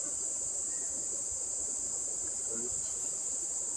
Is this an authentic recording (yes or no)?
yes